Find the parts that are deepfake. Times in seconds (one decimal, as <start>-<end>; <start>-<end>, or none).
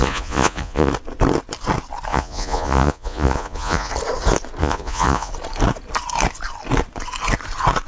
0.0-0.9; 2.1-3.9; 4.6-5.3